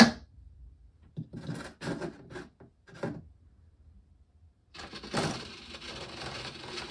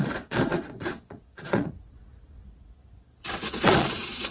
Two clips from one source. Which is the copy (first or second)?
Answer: second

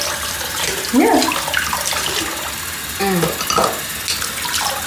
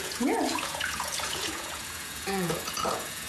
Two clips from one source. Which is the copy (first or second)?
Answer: second